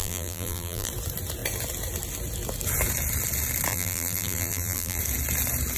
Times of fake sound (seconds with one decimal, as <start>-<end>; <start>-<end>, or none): 0.0-0.9; 3.7-5.0